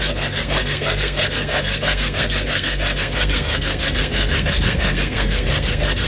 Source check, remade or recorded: remade